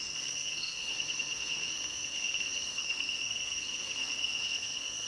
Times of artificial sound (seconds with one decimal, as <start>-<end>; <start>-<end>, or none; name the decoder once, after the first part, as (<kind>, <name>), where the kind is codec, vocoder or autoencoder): 0.0-5.1 (codec, SNAC)